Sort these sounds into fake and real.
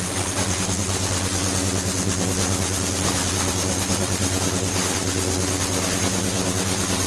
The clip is real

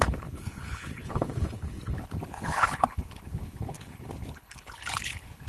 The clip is fake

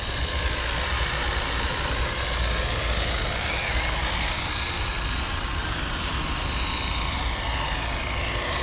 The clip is real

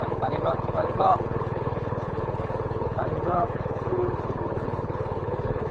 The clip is fake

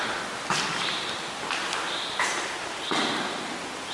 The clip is real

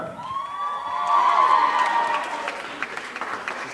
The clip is real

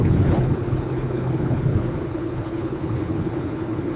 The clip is fake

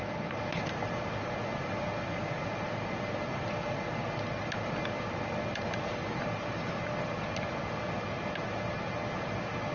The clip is real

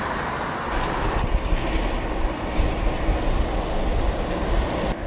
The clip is real